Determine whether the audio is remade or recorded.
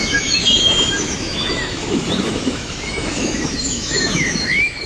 remade